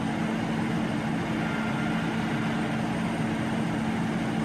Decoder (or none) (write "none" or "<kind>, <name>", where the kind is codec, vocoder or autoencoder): none